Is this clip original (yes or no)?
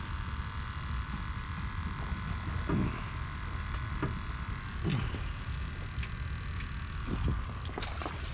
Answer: yes